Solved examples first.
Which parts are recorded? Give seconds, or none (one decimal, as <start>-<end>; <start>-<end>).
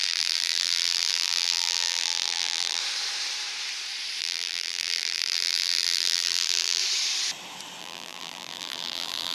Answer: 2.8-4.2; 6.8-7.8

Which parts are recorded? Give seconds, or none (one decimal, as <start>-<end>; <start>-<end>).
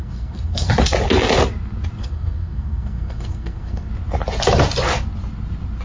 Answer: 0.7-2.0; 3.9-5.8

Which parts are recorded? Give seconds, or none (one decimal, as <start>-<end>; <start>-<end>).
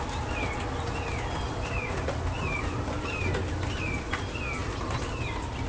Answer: 0.0-5.7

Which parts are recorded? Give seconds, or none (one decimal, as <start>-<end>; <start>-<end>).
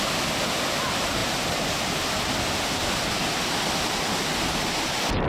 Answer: 0.0-5.3